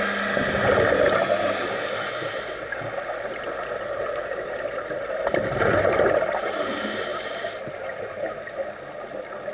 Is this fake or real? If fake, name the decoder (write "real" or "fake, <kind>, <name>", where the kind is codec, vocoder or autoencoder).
real